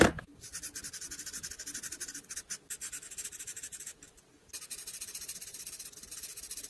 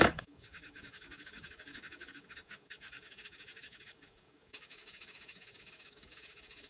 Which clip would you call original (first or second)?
first